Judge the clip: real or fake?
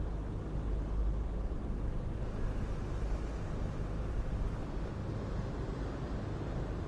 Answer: real